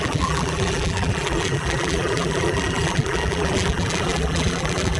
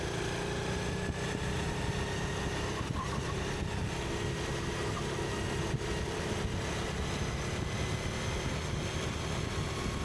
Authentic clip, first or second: second